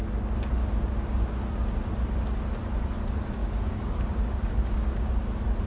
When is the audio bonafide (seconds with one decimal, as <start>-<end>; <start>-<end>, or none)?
0.0-0.6; 1.4-3.4; 5.1-5.7